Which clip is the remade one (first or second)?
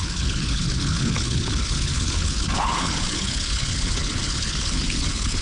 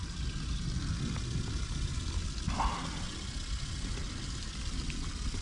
first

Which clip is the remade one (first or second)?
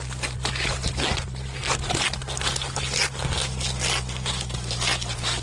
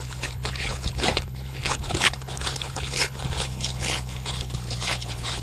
second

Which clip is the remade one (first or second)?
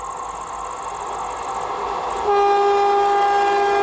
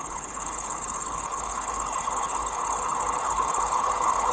second